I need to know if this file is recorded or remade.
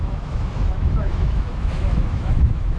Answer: remade